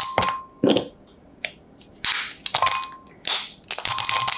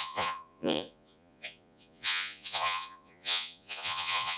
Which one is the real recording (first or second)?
first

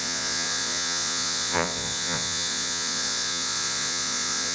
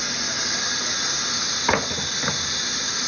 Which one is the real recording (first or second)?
second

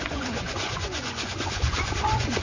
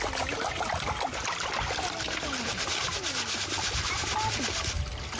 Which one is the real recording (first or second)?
second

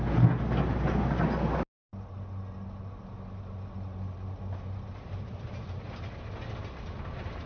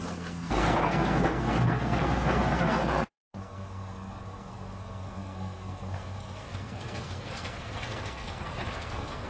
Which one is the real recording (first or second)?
first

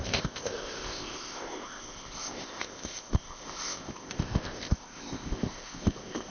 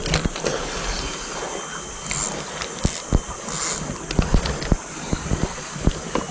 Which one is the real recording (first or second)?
second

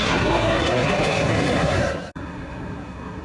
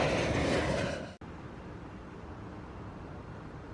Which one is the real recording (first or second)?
second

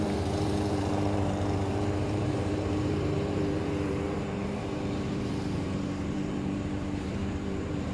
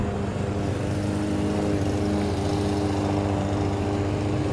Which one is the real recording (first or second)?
second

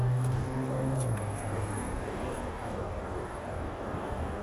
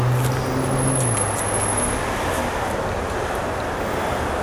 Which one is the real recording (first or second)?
second